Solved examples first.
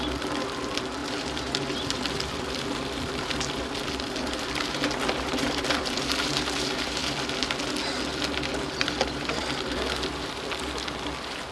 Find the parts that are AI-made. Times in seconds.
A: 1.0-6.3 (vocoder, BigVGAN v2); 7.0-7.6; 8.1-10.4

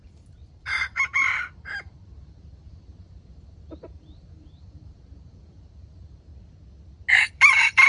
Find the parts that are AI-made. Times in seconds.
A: 0.0-6.3 (vocoder, BigVGAN v2); 7.3-7.9